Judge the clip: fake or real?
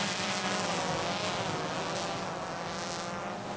real